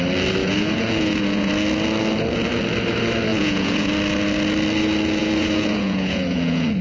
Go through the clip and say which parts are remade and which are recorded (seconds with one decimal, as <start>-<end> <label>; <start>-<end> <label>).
0.0-0.4 recorded; 0.4-1.5 remade; 1.5-3.3 recorded; 3.3-3.9 remade; 3.9-5.2 recorded; 5.2-6.8 remade